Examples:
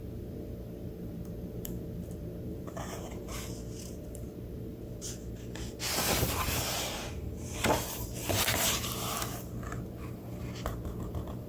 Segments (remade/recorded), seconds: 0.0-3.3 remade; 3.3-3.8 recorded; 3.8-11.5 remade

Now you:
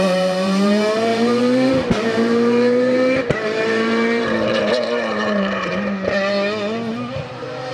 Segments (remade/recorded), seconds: 0.0-5.7 remade; 5.7-7.1 recorded; 7.1-7.7 remade

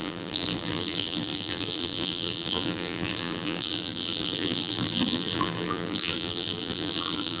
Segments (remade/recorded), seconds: 0.0-7.4 remade